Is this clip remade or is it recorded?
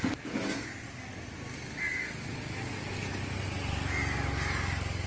recorded